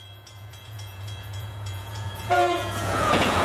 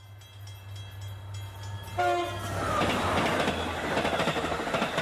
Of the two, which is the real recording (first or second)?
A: second